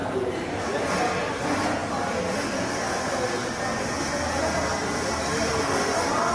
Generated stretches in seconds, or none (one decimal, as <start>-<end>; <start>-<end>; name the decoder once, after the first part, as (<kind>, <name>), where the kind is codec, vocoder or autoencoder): none